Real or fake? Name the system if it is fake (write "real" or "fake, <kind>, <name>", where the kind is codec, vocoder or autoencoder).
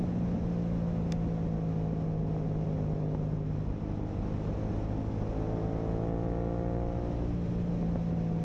real